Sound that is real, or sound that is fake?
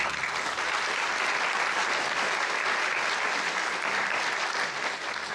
real